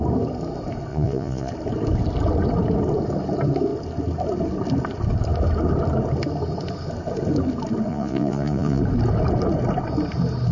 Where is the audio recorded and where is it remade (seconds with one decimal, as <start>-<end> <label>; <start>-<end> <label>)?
0.0-0.9 recorded; 0.9-1.5 remade; 1.5-7.9 recorded; 7.9-8.8 remade; 8.8-10.5 recorded